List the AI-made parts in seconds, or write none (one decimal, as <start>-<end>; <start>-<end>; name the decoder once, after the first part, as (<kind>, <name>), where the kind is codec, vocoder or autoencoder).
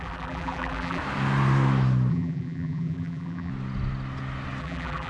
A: 0.0-1.0 (vocoder, BigVGAN v2); 2.1-3.5; 4.6-5.1